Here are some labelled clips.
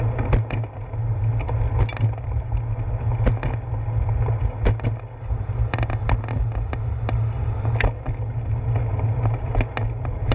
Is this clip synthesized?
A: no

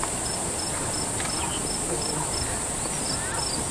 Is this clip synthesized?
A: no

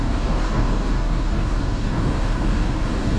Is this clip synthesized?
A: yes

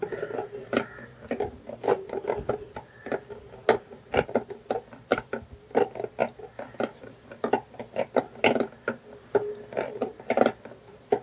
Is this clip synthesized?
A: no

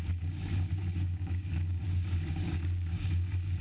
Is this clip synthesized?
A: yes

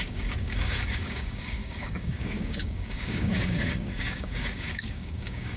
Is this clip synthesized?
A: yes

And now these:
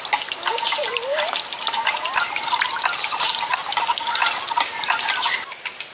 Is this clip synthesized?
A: no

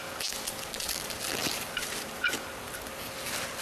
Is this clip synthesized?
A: no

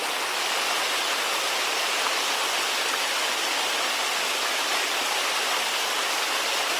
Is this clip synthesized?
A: no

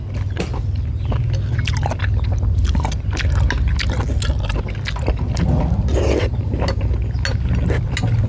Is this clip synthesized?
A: no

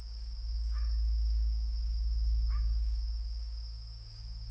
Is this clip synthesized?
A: yes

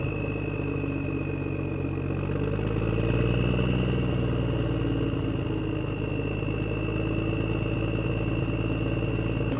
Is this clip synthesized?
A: no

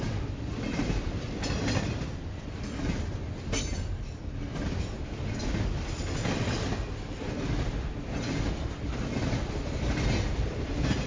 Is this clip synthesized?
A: no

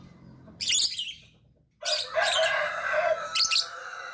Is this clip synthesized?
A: no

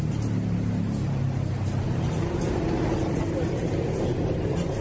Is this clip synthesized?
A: no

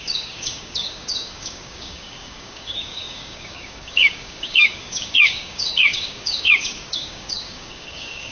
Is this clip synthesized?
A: yes